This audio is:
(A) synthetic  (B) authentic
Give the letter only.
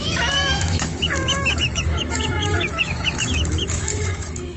A